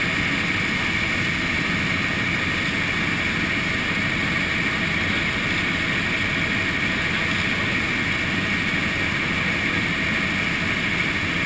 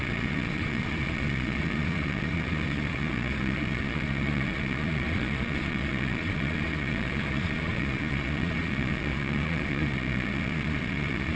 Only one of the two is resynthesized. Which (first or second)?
second